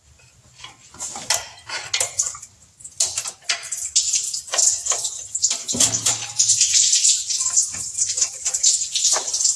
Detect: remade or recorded recorded